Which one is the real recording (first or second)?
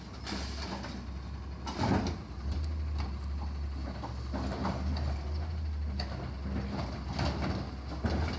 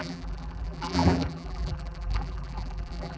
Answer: first